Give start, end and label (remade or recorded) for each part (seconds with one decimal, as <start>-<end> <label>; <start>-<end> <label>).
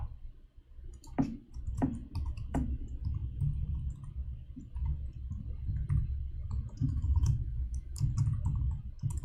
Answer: 0.0-6.8 recorded; 6.8-8.0 remade; 8.0-9.2 recorded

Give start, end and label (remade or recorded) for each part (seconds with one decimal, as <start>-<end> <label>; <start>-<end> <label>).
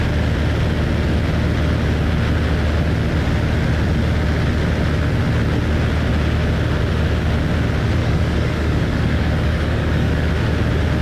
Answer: 0.0-8.0 recorded; 8.0-10.3 remade; 10.3-11.0 recorded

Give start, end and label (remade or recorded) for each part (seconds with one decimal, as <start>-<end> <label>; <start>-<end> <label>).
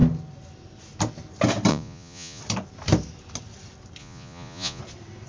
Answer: 0.0-1.7 recorded; 1.7-2.4 remade; 2.4-4.0 recorded; 4.0-4.8 remade; 4.8-5.3 recorded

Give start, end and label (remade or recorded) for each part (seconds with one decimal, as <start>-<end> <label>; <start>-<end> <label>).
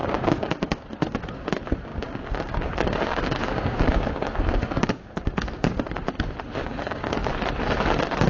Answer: 0.0-0.9 remade; 0.9-1.9 recorded; 1.9-6.1 remade; 6.1-6.6 recorded; 6.6-7.3 remade; 7.3-8.3 recorded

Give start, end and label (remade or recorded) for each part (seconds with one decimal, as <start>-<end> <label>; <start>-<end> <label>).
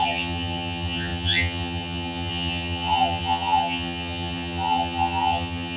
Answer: 0.0-5.8 remade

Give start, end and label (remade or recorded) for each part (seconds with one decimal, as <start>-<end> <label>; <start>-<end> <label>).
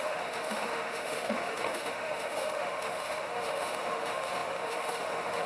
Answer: 0.0-5.5 remade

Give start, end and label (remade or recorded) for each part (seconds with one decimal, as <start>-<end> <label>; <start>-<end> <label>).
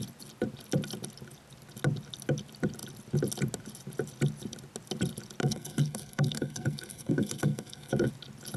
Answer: 0.0-5.4 recorded; 5.4-8.1 remade; 8.1-8.6 recorded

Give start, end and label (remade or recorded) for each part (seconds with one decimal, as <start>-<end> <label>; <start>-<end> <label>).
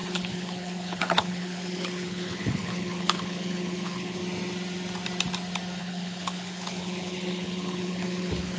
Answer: 0.0-4.2 remade; 4.2-5.8 recorded; 5.8-8.6 remade